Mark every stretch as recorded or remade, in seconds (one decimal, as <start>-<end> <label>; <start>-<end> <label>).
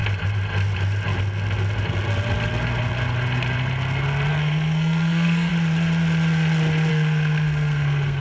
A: 0.0-4.3 recorded; 4.3-5.5 remade; 5.5-6.9 recorded; 6.9-8.2 remade